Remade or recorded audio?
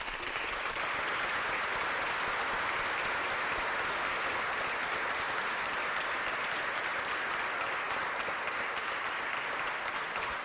recorded